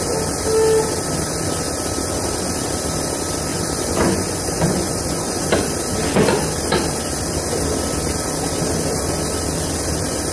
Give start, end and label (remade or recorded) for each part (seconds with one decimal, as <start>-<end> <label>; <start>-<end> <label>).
0.0-3.5 recorded; 3.5-5.4 remade; 5.4-10.3 recorded